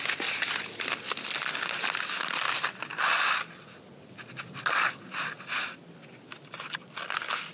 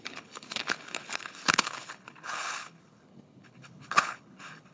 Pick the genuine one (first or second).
first